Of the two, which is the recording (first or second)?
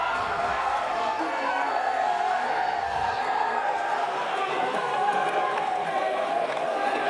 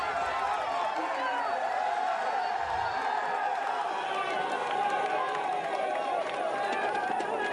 second